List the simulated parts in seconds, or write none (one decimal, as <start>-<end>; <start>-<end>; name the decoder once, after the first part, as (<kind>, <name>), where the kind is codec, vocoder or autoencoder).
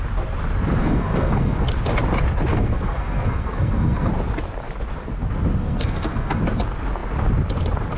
0.8-1.7 (codec, SNAC); 2.5-4.1; 5.6-6.4